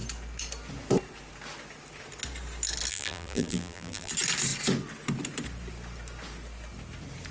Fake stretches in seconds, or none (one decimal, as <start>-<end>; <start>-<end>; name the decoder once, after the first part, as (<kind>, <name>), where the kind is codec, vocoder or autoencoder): 2.9-4.1 (vocoder, BigVGAN v2)